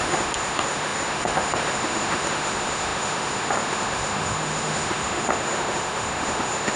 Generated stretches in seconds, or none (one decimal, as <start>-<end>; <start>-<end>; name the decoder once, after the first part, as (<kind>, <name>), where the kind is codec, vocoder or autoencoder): 0.0-6.8 (autoencoder, DAC-VAE)

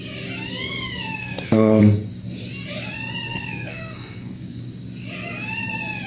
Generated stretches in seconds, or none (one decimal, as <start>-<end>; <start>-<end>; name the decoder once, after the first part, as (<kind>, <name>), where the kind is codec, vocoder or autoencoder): 1.2-1.8 (codec, SNAC); 3.3-4.6